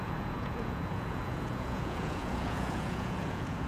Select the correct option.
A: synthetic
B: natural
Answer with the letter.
A